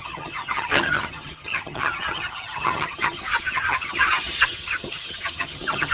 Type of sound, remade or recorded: remade